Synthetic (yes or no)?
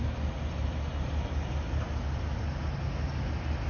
no